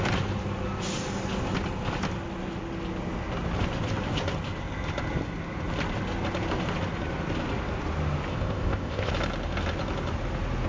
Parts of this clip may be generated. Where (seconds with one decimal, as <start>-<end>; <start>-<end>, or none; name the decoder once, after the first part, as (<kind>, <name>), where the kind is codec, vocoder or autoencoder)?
8.3-9.1 (codec, ZipCodec)